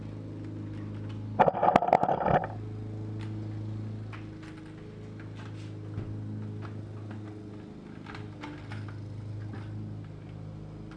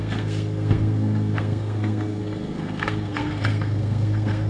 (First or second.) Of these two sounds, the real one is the first